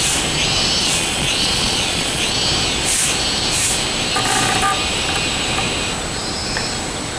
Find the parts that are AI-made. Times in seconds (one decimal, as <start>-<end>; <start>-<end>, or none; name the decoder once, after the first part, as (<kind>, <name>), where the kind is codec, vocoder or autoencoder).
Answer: 0.8-2.3 (vocoder, Vocos)